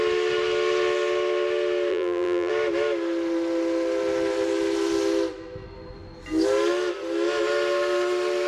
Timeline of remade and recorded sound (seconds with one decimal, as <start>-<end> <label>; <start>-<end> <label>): 0.0-1.9 recorded; 1.9-2.5 remade; 2.5-8.5 recorded